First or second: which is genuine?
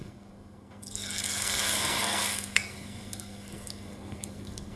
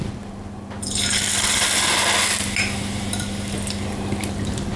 second